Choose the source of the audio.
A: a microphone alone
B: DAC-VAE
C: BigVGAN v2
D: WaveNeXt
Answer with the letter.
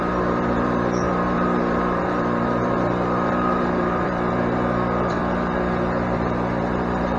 C